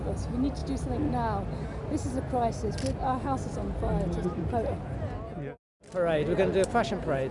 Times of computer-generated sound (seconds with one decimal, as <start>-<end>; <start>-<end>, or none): none